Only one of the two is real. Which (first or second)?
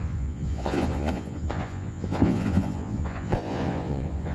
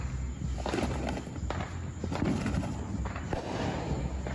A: second